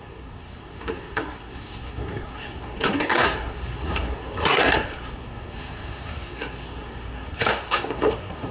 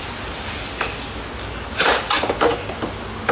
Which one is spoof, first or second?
first